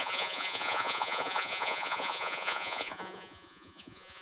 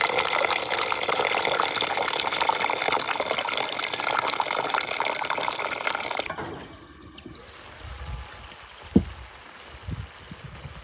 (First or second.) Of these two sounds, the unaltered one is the second